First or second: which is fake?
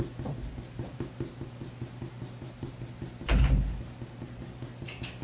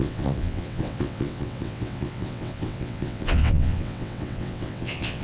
second